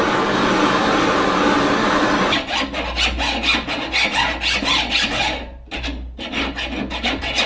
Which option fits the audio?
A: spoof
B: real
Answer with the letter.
B